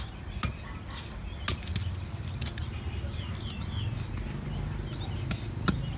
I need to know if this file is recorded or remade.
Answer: recorded